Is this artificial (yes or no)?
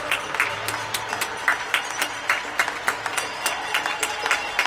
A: no